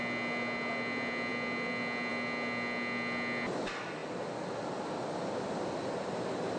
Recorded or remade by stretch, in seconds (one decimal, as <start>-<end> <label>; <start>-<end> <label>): 0.0-6.6 recorded